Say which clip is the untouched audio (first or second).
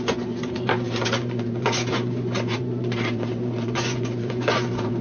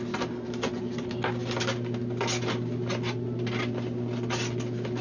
second